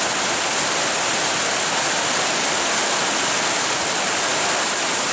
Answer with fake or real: real